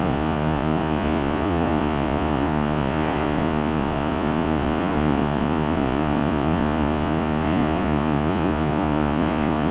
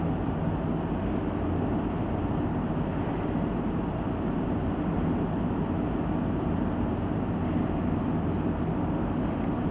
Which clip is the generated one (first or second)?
first